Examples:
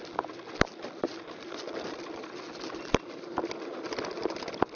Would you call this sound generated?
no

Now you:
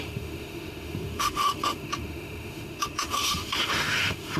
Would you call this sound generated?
yes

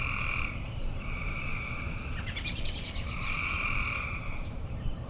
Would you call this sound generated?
yes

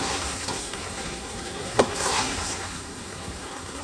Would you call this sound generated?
yes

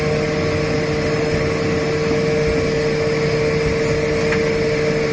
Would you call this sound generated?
no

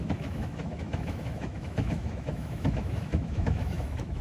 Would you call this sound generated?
yes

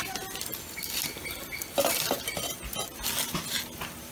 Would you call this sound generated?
no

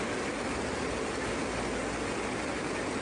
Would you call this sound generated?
no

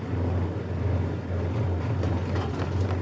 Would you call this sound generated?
no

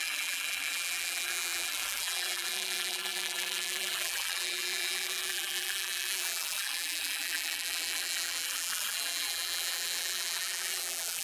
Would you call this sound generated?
yes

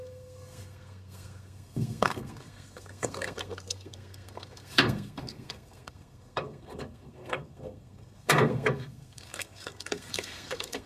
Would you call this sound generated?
yes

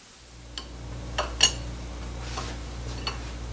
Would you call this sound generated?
no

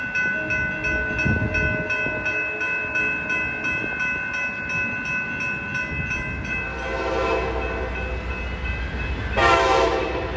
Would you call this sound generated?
no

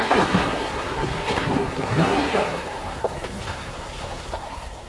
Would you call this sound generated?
yes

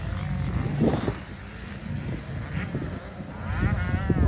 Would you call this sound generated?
no